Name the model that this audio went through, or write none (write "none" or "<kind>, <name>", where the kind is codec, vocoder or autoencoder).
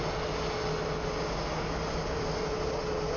none